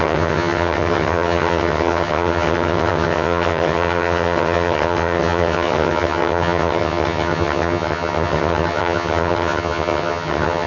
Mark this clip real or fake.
fake